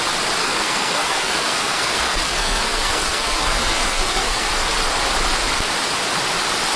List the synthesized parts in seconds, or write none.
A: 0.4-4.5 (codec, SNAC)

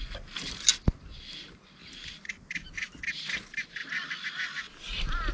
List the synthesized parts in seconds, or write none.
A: 1.8-3.0 (vocoder, BigVGAN v2)

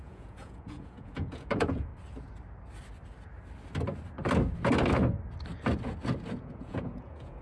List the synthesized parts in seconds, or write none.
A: 0.0-1.9 (vocoder, Vocos); 6.3-7.4

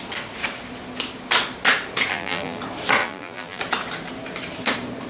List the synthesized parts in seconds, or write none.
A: 2.1-2.6 (vocoder, BigVGAN v2); 3.0-3.6

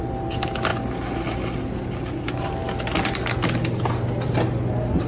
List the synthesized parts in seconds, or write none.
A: none